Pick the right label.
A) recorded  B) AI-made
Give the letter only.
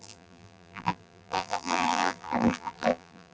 B